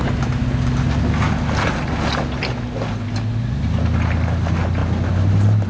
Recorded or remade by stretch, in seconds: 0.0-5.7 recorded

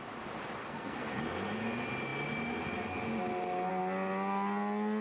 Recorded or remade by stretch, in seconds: 0.0-0.6 recorded; 0.6-1.2 remade; 1.2-5.0 recorded

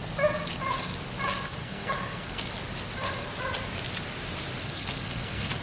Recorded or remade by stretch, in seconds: 0.0-1.6 recorded; 1.6-2.5 remade; 2.5-4.6 recorded; 4.6-5.6 remade

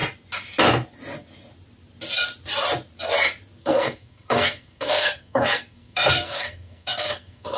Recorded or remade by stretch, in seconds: 0.0-3.6 recorded; 3.6-7.6 remade

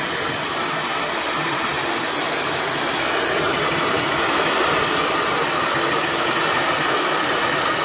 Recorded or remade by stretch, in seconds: 0.0-7.8 recorded

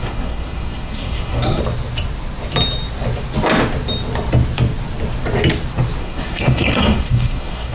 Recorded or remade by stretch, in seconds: 0.0-1.6 remade; 1.6-6.0 recorded; 6.0-7.7 remade